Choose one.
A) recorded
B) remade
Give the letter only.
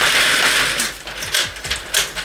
A